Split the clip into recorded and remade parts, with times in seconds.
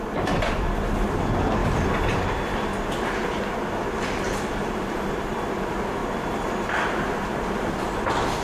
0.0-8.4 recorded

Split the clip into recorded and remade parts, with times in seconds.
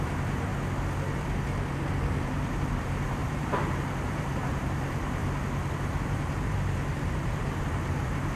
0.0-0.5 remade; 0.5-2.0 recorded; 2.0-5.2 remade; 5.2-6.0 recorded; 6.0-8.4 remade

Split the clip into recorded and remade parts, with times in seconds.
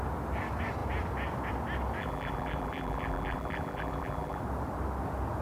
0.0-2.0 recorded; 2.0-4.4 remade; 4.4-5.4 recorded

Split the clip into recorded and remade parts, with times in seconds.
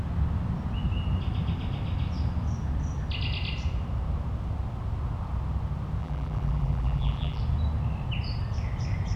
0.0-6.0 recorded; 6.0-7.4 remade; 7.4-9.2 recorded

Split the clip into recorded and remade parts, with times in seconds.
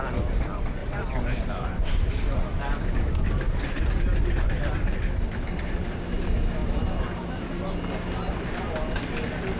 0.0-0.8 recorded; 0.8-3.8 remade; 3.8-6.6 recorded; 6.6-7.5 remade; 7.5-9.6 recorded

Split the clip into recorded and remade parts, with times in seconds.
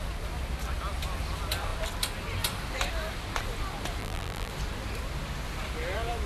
0.0-4.0 recorded; 4.0-4.5 remade; 4.5-6.3 recorded